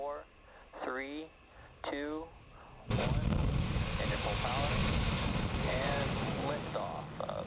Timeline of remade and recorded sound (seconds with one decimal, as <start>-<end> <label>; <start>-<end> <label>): 0.0-4.8 recorded; 4.8-6.4 remade; 6.4-7.5 recorded